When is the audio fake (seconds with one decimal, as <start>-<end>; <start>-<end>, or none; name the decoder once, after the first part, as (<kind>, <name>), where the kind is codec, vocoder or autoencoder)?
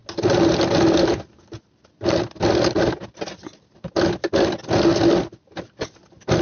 none